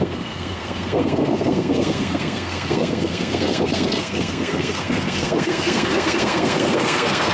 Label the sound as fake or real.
fake